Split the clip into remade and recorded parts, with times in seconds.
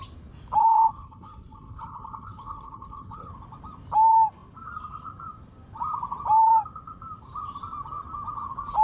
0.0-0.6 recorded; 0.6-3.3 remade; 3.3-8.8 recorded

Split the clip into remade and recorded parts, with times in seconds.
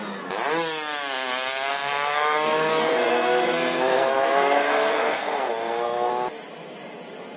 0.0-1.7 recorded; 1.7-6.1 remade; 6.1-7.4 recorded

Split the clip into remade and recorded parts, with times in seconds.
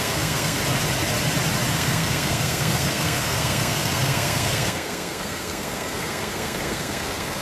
0.0-0.6 remade; 0.6-1.7 recorded; 1.7-7.4 remade